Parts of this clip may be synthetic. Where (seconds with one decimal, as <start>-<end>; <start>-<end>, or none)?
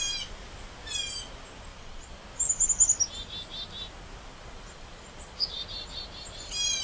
1.7-2.2; 4.3-5.6